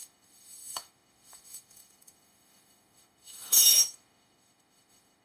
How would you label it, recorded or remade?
remade